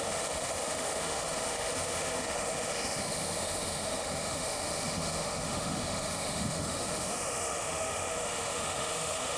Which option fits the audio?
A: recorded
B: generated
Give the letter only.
B